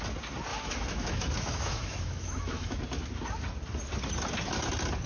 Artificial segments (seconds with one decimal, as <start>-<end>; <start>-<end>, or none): 0.5-2.8